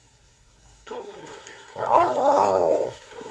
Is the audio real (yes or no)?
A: no